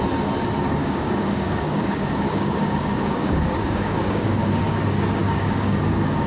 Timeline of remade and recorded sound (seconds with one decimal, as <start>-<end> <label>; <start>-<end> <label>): 0.0-0.8 recorded; 0.8-4.6 remade; 4.6-5.2 recorded; 5.2-6.3 remade